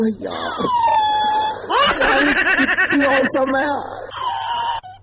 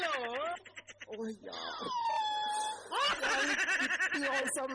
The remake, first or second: first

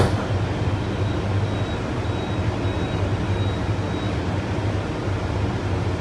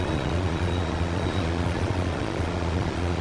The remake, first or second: second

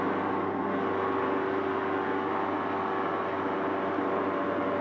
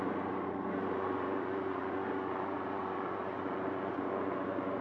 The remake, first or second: second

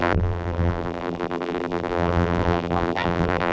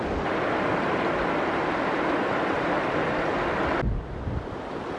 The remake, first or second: first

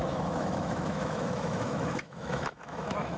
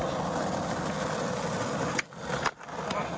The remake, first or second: first